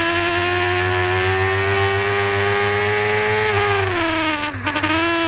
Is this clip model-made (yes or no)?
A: no